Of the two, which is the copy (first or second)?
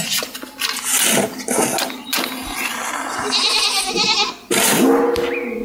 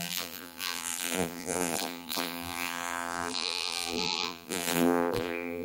second